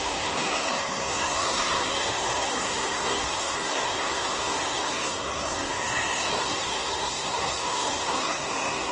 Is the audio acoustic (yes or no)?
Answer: no